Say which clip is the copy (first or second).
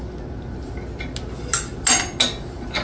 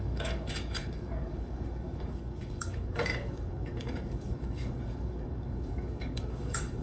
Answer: second